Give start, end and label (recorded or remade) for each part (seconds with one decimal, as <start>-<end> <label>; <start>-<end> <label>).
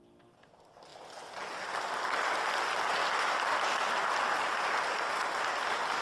0.0-6.0 recorded